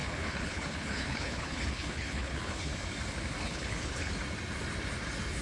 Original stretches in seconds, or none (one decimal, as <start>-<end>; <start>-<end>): 2.7-3.4; 4.1-5.4